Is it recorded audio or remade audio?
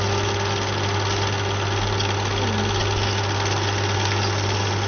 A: recorded